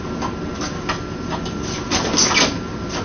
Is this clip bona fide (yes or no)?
yes